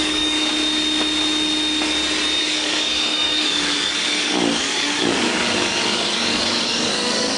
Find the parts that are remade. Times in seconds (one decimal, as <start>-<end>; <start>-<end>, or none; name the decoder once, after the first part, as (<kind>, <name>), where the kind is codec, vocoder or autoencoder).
0.0-0.5 (codec, DAC); 2.4-7.4